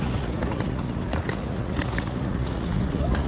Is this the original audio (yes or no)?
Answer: no